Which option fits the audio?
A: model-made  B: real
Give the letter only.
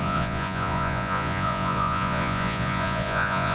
A